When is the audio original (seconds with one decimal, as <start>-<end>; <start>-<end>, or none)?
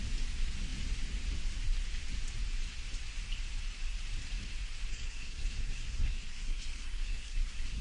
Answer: 0.0-4.9